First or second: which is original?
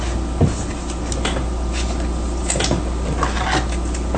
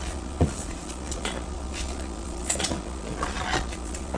first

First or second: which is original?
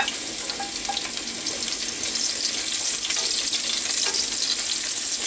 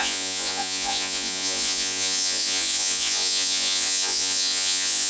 first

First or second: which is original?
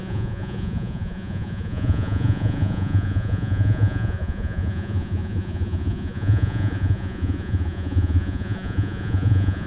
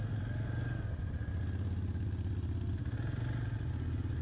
second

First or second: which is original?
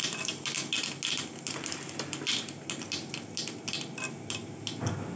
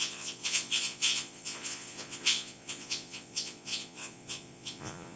first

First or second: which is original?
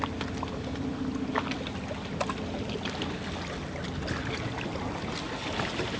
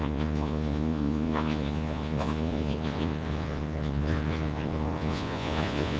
first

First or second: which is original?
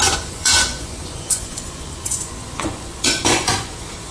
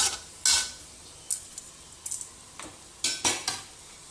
second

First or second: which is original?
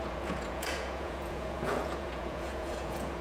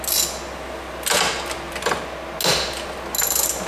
second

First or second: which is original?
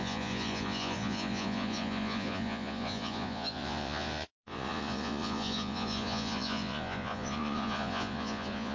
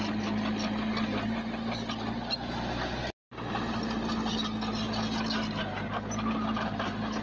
second